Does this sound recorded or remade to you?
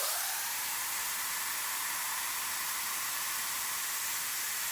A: remade